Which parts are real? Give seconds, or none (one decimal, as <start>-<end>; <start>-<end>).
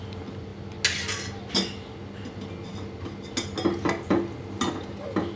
0.0-5.4